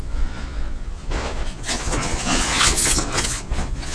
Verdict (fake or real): fake